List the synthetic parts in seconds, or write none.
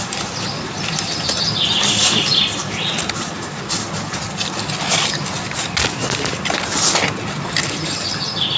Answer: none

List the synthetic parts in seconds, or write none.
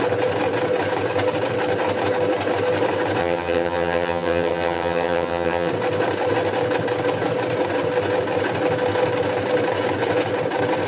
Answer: 3.2-5.7 (vocoder, HiFi-GAN)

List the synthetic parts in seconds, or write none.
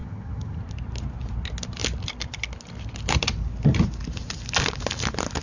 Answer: 0.0-0.6 (vocoder, HiFi-GAN)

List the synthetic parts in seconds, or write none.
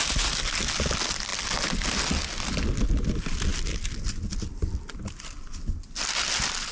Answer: none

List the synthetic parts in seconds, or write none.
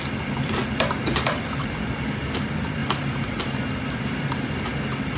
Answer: none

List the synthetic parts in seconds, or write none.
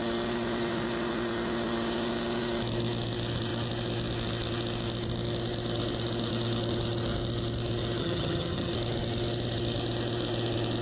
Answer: 8.0-8.7 (vocoder, HiFi-GAN)